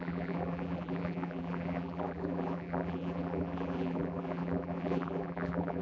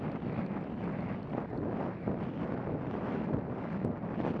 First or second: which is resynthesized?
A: first